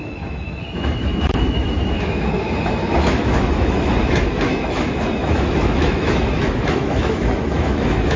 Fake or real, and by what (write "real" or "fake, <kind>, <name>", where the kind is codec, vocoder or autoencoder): fake, autoencoder, DAC-VAE